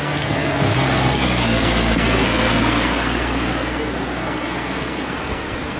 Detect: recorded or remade remade